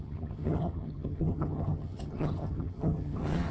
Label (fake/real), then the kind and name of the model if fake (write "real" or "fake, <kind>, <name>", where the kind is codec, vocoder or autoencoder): fake, vocoder, HiFi-GAN